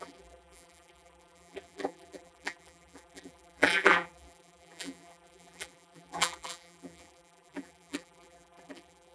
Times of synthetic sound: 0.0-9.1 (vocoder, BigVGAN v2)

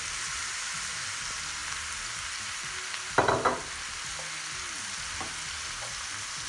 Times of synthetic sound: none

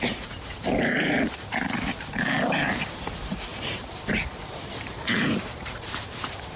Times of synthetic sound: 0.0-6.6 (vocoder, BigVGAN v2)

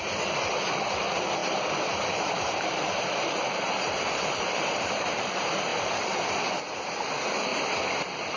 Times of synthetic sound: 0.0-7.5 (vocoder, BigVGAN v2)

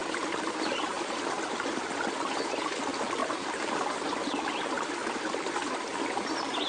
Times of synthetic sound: 0.0-0.8 (vocoder, BigVGAN v2); 3.2-4.6